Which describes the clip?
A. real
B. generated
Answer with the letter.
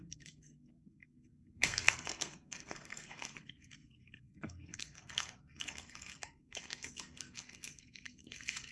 B